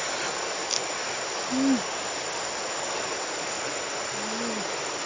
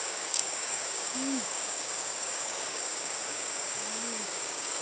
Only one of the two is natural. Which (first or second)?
first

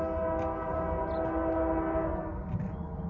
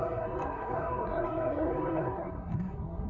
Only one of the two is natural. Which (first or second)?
first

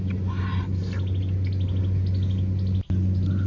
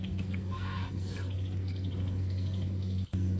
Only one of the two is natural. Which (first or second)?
first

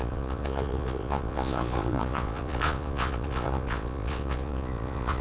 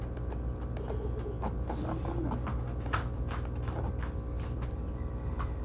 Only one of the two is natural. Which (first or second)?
second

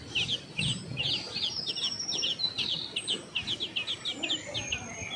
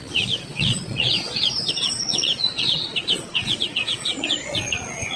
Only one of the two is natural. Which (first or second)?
first